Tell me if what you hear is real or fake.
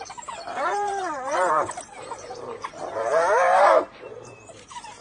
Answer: fake